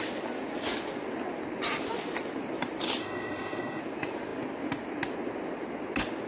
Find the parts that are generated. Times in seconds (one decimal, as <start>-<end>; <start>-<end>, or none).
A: 3.0-3.8